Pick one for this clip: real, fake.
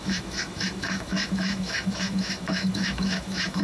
fake